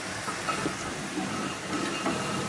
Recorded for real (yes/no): yes